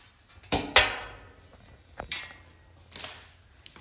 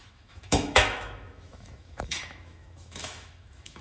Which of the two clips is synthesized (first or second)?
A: second